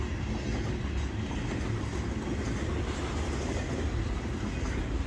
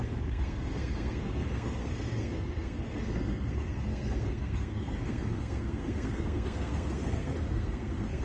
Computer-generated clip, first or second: second